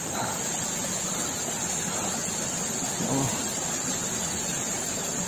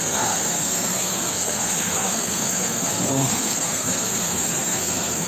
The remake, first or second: second